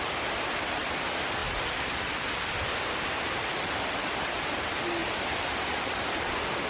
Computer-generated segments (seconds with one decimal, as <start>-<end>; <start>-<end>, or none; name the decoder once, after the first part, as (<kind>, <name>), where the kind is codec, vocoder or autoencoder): none